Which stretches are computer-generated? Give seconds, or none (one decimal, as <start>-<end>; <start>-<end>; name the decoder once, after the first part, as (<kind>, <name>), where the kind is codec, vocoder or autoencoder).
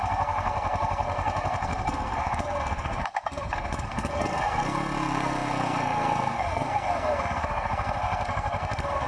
0.0-9.1 (codec, SNAC)